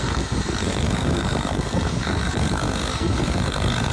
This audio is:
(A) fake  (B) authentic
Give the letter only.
A